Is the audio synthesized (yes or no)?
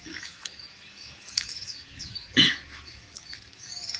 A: yes